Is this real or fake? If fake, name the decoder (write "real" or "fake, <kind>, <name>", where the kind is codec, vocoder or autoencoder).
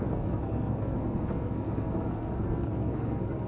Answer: fake, codec, SNAC